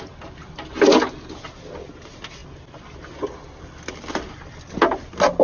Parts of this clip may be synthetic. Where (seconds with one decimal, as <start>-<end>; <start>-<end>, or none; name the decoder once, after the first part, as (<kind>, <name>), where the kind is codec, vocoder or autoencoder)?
none